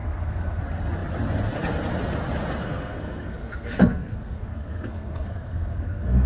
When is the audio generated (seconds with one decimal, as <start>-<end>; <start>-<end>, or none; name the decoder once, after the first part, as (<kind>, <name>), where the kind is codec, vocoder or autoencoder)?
0.0-0.6 (codec, SNAC); 2.6-6.3